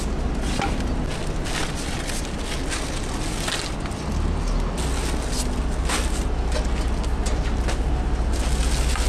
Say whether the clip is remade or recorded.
recorded